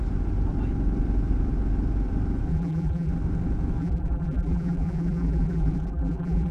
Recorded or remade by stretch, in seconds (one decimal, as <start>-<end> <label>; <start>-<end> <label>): 0.0-2.5 recorded; 2.5-3.1 remade; 3.1-3.8 recorded; 3.8-6.5 remade